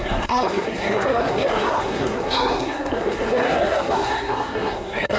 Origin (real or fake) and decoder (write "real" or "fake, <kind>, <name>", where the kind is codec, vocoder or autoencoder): fake, codec, SNAC